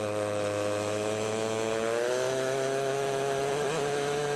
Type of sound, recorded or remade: remade